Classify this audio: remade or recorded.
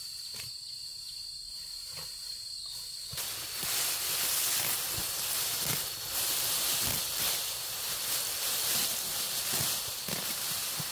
recorded